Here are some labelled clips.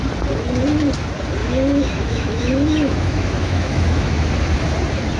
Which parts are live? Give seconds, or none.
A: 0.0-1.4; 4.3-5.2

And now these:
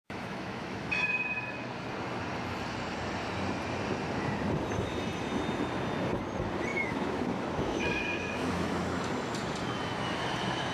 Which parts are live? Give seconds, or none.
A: 1.7-6.7; 9.0-10.7